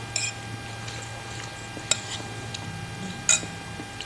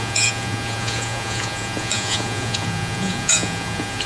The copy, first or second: second